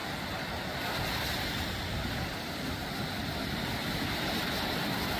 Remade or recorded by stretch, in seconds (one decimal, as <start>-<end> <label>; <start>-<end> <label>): 0.0-3.1 remade; 3.1-5.2 recorded